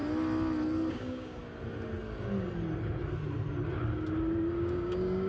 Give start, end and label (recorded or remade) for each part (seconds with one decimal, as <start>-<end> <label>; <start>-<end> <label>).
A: 0.0-0.9 recorded; 0.9-1.4 remade; 1.4-4.6 recorded; 4.6-5.3 remade